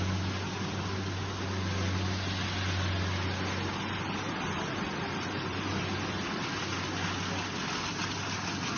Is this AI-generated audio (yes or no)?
no